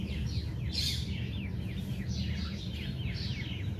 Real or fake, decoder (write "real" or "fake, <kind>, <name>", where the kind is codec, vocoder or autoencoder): real